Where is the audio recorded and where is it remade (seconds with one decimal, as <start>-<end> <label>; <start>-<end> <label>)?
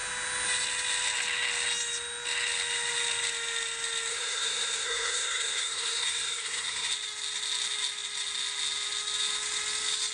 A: 0.0-4.1 recorded; 4.1-6.9 remade; 6.9-10.1 recorded